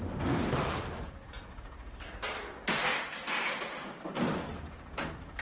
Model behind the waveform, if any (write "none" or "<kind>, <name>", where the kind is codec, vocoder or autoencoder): none